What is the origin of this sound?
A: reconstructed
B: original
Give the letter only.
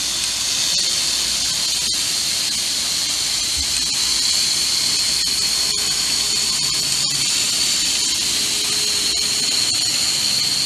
B